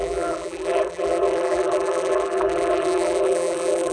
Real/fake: fake